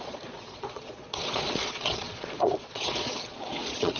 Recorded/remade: remade